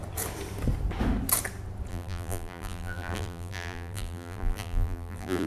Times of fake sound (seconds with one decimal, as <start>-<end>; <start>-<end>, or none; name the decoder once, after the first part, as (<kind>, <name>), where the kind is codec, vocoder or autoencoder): 1.9-5.5 (vocoder, BigVGAN v2)